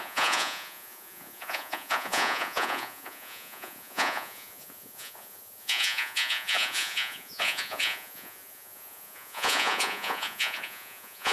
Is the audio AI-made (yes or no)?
yes